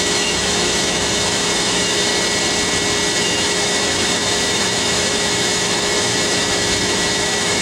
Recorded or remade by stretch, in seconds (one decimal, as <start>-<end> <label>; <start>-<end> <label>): 0.0-2.1 remade; 2.1-3.1 recorded; 3.1-7.6 remade